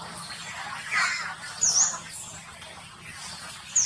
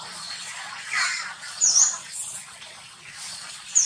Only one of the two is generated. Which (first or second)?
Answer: second